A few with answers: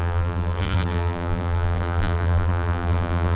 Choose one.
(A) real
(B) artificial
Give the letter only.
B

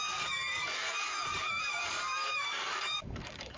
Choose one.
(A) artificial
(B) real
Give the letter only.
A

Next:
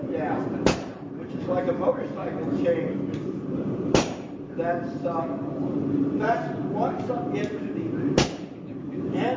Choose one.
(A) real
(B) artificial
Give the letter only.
B